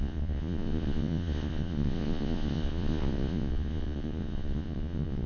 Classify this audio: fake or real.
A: fake